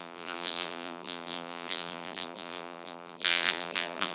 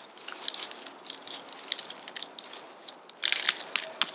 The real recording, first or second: second